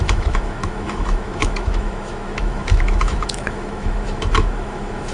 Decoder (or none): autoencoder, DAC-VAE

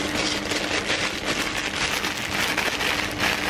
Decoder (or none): none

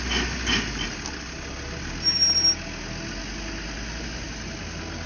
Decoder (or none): none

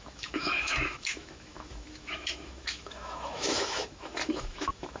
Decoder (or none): autoencoder, DAC-VAE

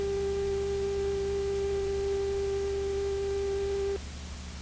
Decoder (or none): none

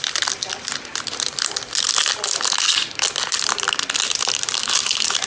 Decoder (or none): none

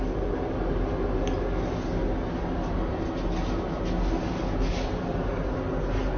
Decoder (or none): none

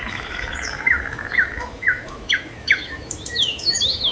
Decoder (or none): autoencoder, DAC-VAE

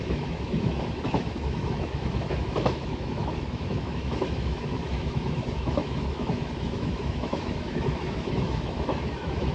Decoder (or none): autoencoder, DAC-VAE